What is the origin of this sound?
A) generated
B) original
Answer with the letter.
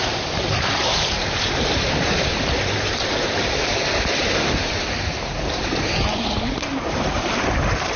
A